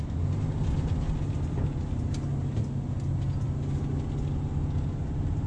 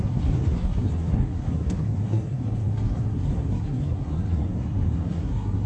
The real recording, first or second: first